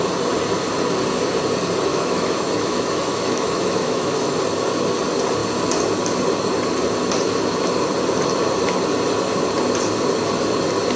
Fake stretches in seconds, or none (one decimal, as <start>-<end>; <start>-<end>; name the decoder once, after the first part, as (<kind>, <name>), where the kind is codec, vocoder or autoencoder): 1.9-4.4 (autoencoder, DAC-VAE)